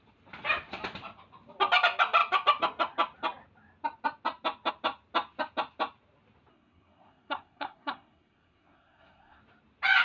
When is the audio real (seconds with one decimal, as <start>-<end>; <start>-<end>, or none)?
0.0-6.5; 9.4-10.0